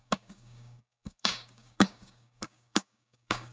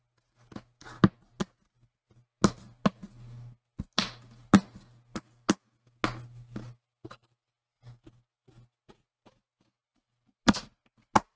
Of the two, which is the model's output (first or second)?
first